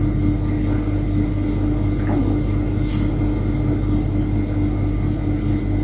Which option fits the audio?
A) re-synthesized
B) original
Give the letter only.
B